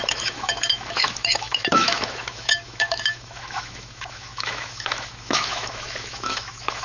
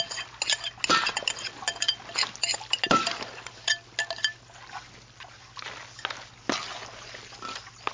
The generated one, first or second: first